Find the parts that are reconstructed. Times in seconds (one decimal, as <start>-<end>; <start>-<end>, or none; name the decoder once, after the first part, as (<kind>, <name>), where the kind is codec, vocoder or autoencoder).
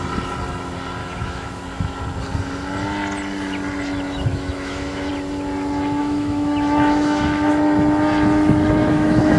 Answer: 1.0-1.6 (autoencoder, DAC-VAE); 4.3-5.1; 6.0-7.5; 8.8-9.4